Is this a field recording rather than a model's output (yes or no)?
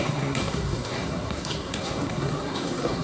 no